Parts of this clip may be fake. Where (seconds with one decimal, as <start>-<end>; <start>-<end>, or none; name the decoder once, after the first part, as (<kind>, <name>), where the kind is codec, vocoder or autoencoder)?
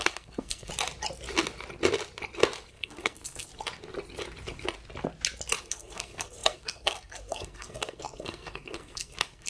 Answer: 0.0-0.7 (codec, SNAC); 2.7-3.5; 5.7-9.5